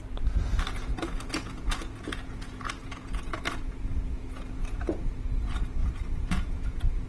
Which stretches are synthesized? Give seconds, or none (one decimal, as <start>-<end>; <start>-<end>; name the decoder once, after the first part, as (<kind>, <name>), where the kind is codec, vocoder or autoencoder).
0.8-5.1 (vocoder, Vocos); 5.8-7.1

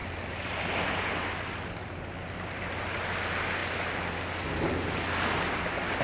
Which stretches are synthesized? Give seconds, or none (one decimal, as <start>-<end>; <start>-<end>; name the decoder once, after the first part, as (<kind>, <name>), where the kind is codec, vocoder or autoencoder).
none